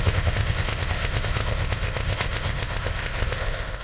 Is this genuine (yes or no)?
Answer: no